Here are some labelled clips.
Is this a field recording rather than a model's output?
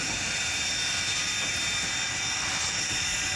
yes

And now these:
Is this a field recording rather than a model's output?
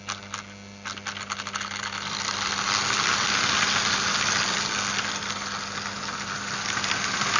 yes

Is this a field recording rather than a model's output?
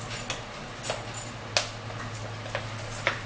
yes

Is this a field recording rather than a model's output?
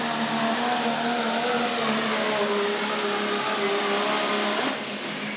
yes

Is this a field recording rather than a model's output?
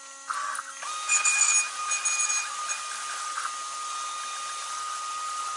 yes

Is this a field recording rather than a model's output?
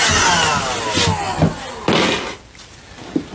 yes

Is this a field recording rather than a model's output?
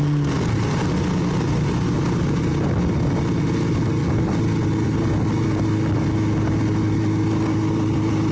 yes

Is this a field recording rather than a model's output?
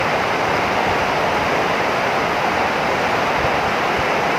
yes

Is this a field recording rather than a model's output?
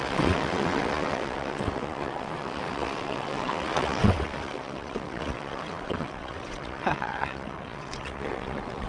no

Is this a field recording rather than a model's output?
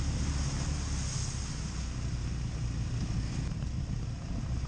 yes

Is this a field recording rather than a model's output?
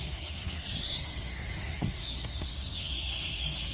no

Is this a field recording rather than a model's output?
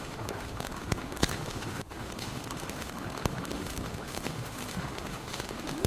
no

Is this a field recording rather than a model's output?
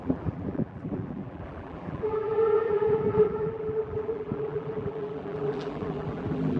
no